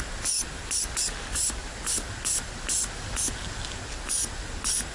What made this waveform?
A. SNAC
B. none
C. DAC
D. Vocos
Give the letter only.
B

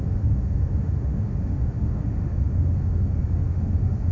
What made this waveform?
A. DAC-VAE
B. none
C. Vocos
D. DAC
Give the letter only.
A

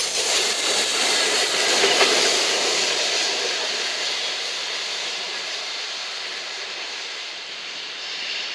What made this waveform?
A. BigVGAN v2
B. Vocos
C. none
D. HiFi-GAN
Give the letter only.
A